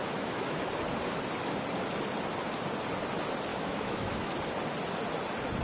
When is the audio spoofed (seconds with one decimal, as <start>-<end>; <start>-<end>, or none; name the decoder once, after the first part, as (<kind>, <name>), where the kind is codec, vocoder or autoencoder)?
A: 0.0-0.6 (autoencoder, DAC-VAE); 3.5-4.3